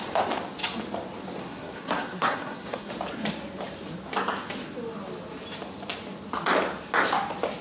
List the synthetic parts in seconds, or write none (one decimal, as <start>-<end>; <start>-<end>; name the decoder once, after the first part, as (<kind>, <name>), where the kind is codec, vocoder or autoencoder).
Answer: 1.4-2.9 (codec, SNAC)